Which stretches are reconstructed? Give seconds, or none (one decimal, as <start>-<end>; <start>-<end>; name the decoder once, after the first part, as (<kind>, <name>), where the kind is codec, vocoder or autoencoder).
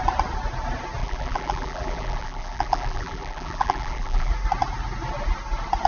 1.0-4.3 (vocoder, BigVGAN v2)